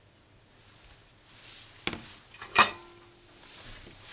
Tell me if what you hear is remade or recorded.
recorded